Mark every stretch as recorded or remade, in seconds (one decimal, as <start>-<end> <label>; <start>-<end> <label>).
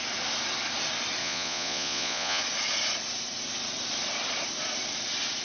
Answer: 0.0-1.2 recorded; 1.2-2.4 remade; 2.4-5.4 recorded